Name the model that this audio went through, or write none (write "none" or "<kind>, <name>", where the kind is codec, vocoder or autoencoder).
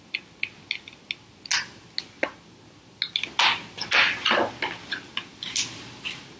none